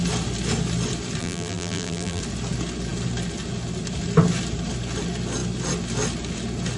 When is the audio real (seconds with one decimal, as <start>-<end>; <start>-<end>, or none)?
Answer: 0.0-1.2; 2.2-6.8